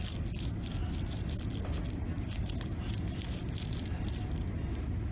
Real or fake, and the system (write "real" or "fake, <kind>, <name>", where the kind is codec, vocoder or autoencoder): real